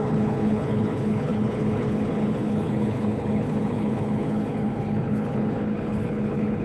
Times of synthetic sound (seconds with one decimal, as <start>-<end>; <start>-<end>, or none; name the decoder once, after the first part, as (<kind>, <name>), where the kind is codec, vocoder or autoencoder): 0.0-6.6 (codec, HILCodec)

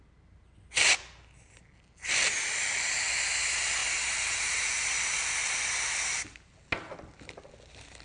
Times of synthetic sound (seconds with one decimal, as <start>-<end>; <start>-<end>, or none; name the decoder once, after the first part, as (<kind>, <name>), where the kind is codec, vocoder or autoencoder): none

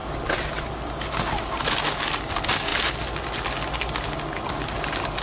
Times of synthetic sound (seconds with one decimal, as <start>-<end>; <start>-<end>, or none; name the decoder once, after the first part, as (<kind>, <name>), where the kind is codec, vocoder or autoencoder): none

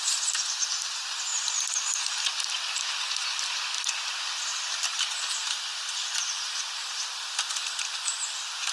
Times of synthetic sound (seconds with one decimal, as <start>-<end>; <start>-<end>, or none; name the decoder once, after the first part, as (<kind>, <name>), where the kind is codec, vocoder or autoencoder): none